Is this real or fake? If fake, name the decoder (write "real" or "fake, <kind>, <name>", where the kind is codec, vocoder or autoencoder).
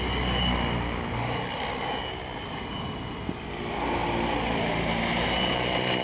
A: real